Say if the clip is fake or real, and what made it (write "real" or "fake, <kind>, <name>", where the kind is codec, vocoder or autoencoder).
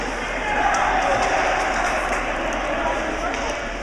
fake, vocoder, BigVGAN v2